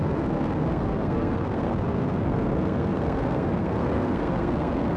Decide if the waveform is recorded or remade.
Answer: remade